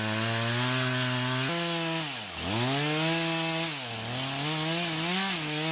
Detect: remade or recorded recorded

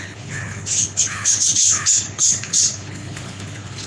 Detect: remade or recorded remade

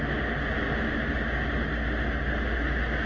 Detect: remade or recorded recorded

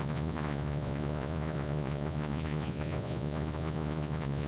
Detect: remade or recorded remade